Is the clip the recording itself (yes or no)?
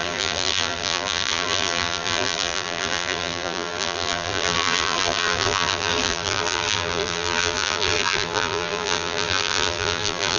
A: no